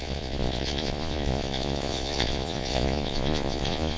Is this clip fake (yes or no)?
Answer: yes